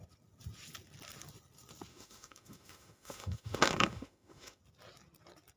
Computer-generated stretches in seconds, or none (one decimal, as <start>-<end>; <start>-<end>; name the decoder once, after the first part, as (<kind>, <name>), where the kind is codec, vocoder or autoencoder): 1.9-4.6 (autoencoder, DAC-VAE)